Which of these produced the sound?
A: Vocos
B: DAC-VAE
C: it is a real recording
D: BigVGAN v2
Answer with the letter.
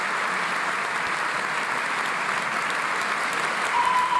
C